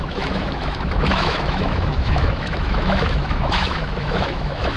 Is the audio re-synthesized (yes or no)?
yes